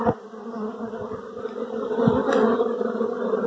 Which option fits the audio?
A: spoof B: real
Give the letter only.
B